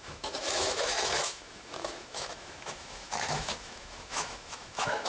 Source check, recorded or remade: remade